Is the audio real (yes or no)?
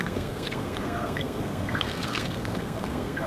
no